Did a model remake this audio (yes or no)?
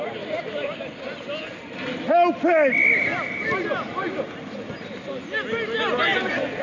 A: no